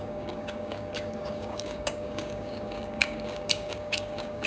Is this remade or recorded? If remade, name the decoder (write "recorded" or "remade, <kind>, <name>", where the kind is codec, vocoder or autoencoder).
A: remade, codec, DAC